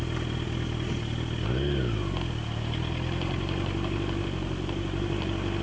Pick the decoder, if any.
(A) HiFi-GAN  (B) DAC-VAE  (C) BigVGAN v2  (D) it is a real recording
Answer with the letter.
D